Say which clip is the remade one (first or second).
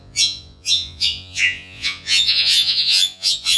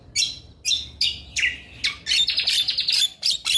first